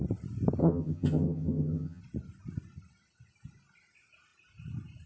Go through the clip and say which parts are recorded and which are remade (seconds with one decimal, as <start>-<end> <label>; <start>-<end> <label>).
0.0-0.6 recorded; 0.6-2.0 remade; 2.0-5.1 recorded